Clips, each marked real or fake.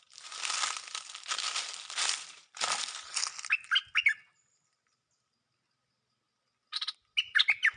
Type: real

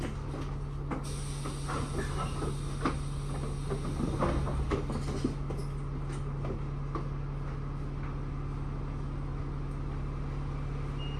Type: real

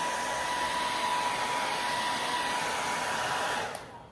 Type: real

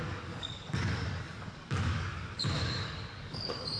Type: fake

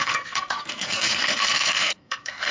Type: fake